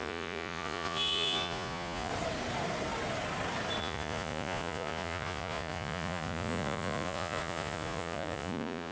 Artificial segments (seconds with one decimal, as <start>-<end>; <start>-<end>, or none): 0.0-2.1; 3.8-8.9